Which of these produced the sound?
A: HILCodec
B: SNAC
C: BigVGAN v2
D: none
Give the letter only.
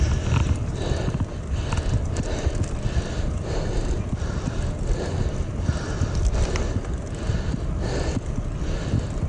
D